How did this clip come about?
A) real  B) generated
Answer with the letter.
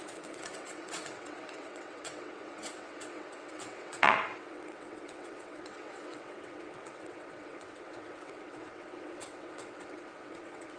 B